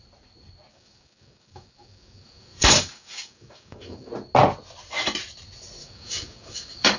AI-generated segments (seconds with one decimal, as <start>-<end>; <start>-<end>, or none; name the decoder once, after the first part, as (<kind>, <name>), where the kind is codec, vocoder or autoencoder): 0.7-4.1 (codec, DAC); 5.8-7.0